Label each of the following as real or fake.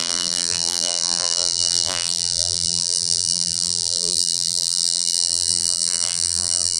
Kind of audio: fake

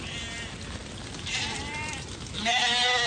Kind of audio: real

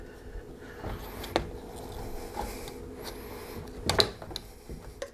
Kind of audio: real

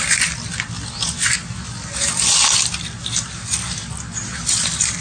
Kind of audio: fake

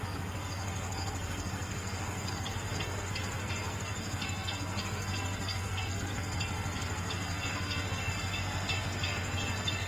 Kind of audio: fake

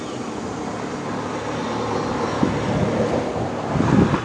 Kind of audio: fake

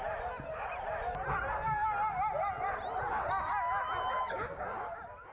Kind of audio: real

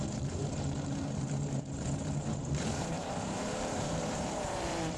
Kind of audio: fake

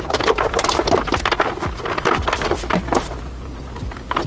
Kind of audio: real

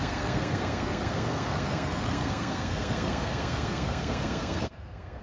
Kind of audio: fake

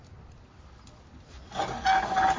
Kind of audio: real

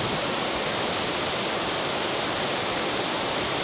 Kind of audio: real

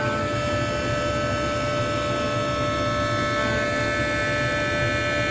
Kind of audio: real